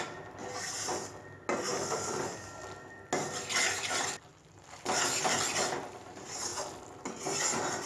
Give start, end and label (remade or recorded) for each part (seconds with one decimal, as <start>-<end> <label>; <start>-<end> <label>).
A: 0.0-7.9 recorded